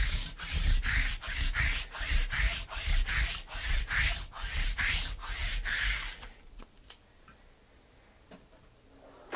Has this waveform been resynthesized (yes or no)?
no